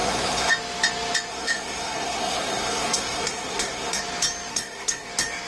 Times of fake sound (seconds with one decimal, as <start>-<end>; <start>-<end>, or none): 0.0-0.5; 1.3-4.0; 4.5-5.1